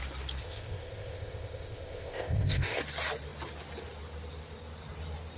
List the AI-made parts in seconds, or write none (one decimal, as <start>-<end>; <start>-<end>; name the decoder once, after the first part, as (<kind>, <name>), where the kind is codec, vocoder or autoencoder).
0.4-2.8 (codec, ZipCodec)